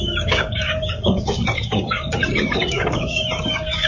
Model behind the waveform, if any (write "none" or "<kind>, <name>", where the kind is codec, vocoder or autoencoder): codec, DAC